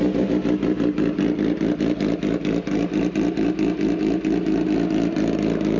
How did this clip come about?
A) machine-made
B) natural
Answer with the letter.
B